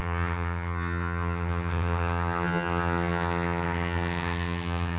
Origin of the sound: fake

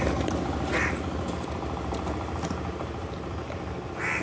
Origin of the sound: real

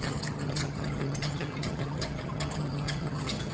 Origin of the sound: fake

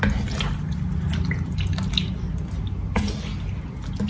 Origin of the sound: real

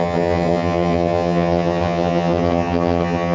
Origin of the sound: fake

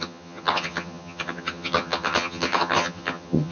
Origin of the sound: fake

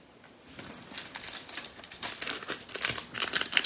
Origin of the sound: real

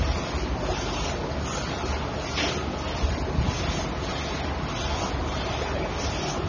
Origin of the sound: real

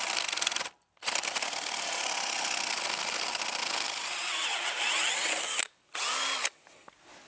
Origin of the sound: real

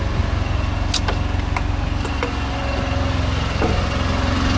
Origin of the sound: real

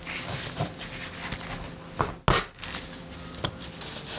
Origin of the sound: real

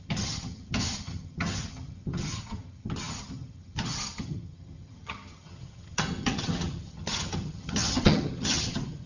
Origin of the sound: fake